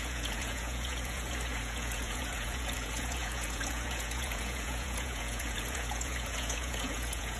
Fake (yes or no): yes